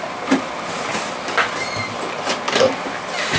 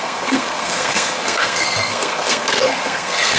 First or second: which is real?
first